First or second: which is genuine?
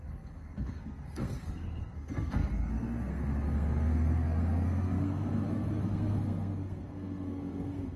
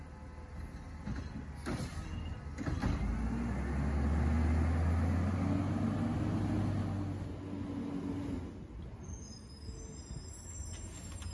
second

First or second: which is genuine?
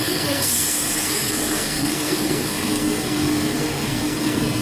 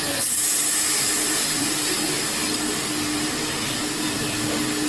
second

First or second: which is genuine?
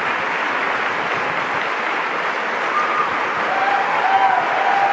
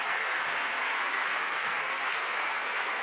first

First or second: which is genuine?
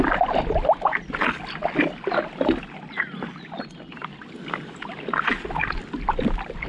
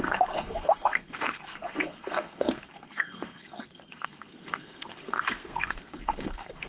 first